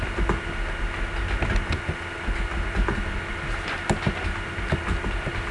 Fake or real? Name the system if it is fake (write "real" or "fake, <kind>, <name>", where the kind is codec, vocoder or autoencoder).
real